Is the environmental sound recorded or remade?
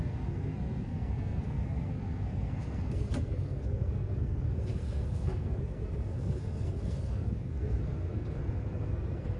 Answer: remade